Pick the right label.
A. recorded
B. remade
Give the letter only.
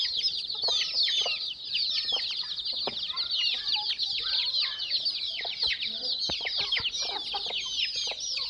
A